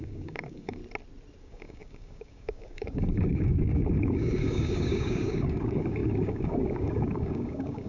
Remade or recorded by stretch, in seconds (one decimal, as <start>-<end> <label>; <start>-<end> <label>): 0.0-0.8 remade; 0.8-1.4 recorded; 1.4-7.9 remade